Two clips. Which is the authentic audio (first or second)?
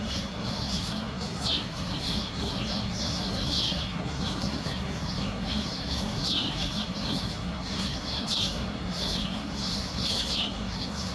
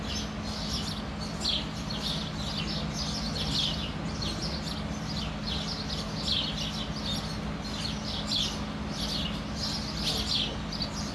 second